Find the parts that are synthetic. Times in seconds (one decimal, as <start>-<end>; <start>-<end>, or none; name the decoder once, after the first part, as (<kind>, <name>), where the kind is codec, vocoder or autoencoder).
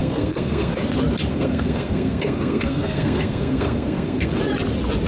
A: 0.0-0.7 (codec, SNAC); 1.3-4.4